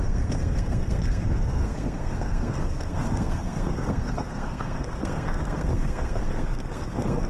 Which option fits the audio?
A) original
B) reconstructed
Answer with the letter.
B